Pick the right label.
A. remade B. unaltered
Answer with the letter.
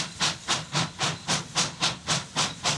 B